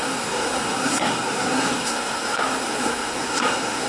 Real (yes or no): no